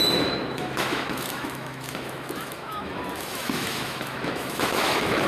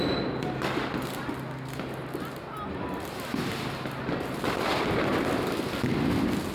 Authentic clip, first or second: second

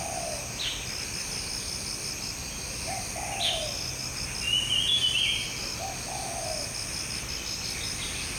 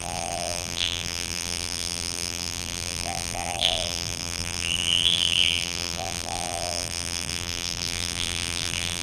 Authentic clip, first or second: first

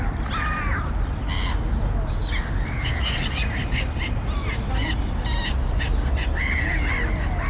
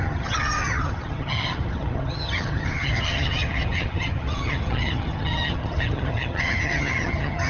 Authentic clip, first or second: first